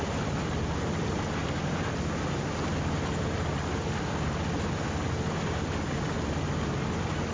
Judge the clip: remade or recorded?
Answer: recorded